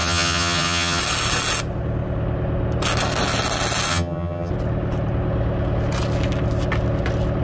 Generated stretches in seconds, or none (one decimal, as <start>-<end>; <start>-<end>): 0.0-1.0; 3.9-4.5